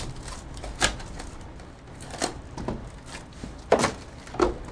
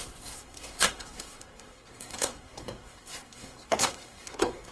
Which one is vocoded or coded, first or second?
second